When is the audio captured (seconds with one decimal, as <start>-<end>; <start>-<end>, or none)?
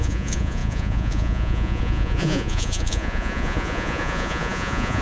none